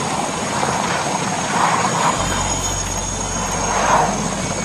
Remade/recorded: recorded